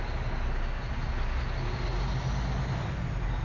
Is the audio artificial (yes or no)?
no